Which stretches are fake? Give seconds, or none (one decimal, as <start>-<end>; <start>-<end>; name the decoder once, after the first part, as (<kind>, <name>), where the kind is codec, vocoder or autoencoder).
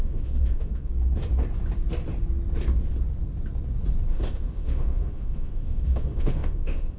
0.0-0.9 (autoencoder, DAC-VAE); 4.1-7.0